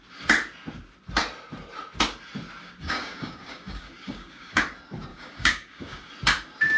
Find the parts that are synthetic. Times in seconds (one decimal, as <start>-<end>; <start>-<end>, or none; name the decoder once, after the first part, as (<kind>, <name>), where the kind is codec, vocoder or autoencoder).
2.6-4.6 (codec, DAC); 5.1-6.1